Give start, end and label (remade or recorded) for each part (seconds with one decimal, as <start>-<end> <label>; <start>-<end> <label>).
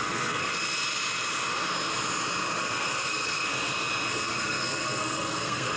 0.0-0.5 remade; 0.5-2.6 recorded; 2.6-3.5 remade; 3.5-4.1 recorded; 4.1-5.8 remade